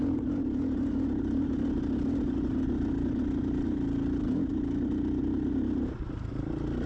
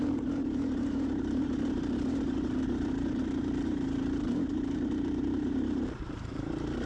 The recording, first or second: first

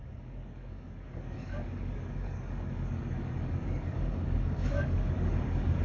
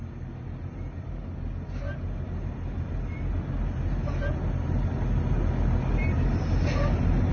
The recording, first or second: second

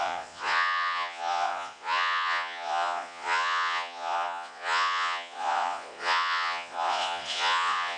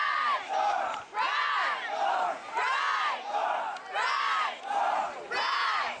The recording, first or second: second